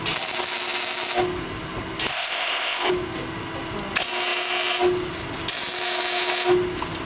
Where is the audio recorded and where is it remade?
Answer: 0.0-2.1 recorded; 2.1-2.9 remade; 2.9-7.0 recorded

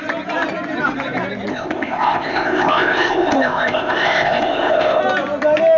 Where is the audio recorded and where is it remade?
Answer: 0.0-1.5 recorded; 1.5-5.0 remade; 5.0-5.8 recorded